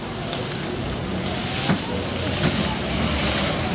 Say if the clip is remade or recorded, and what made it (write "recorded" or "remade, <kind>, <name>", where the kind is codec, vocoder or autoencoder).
recorded